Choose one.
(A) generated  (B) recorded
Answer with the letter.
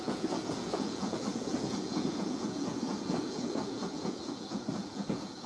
A